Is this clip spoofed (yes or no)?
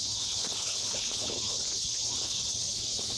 yes